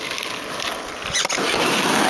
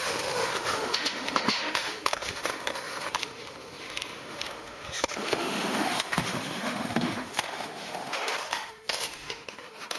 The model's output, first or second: second